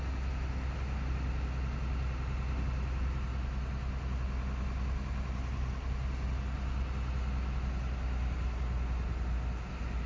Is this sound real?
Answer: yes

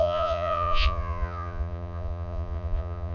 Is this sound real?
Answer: no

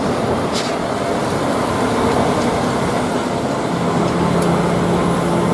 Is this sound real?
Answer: yes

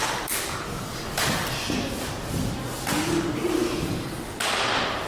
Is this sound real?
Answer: yes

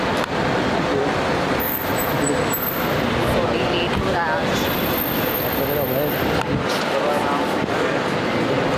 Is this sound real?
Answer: yes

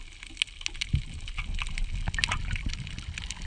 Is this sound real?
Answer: yes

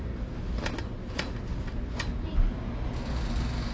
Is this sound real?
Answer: yes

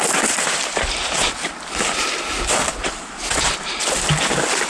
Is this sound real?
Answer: no